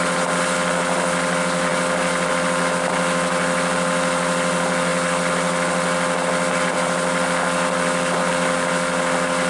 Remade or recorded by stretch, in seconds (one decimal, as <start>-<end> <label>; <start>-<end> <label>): 0.0-9.5 recorded